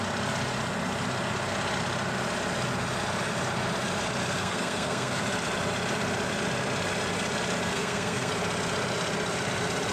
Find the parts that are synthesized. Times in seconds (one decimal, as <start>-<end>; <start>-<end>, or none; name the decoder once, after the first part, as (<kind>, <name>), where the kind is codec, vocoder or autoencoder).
4.4-5.2 (codec, SNAC); 7.7-8.3